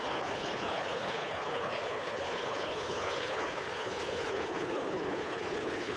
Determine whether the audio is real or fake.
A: fake